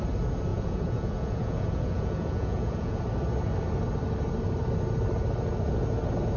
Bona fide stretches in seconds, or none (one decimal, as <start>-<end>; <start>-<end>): 0.0-0.5; 3.0-6.4